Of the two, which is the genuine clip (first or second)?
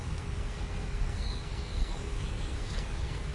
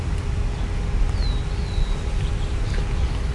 second